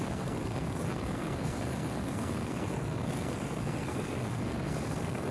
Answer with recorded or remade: remade